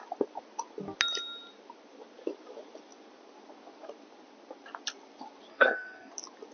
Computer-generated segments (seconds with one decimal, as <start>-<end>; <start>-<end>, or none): 5.5-6.1